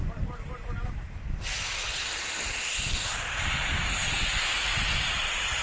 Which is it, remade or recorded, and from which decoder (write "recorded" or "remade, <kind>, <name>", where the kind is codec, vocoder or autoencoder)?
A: recorded